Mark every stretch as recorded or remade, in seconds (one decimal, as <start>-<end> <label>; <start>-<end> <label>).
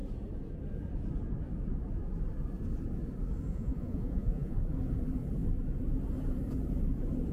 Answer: 0.0-3.5 recorded; 3.5-4.6 remade; 4.6-7.3 recorded